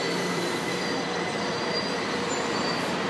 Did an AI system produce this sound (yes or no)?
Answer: yes